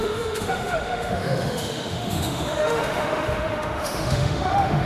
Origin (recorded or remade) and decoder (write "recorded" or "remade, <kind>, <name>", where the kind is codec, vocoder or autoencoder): remade, autoencoder, DAC-VAE